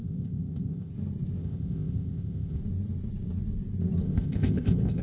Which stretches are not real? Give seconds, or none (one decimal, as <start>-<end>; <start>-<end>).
0.0-0.9; 1.4-2.6; 4.0-5.0